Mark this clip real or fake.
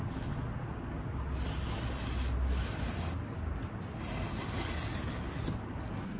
real